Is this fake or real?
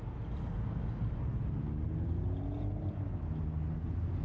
real